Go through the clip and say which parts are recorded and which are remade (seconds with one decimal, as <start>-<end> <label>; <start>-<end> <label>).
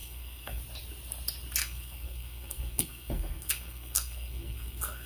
0.0-0.6 remade; 0.6-1.6 recorded; 1.6-5.1 remade